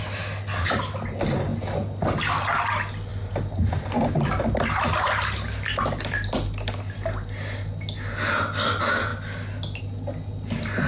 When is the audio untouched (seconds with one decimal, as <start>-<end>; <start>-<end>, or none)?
0.0-10.9